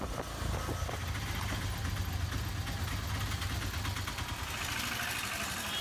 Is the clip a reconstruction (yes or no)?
no